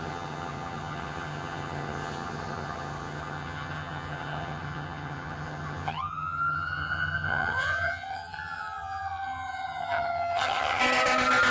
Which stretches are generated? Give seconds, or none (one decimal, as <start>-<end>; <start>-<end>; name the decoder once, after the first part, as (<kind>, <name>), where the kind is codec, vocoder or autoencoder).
0.0-10.8 (vocoder, HiFi-GAN)